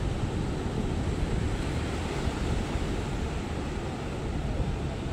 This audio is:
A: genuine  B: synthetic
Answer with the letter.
B